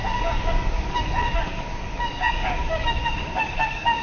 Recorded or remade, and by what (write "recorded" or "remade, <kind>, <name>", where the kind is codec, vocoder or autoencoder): remade, codec, DAC